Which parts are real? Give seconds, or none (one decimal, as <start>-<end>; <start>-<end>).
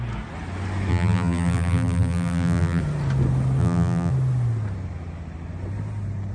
0.0-0.9; 2.8-3.6; 4.1-6.3